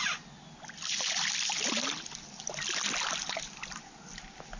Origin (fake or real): real